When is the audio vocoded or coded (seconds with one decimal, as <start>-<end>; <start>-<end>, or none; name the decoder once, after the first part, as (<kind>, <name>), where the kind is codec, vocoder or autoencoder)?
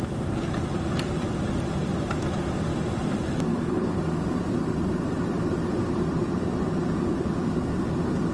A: 3.5-4.0 (codec, HILCodec)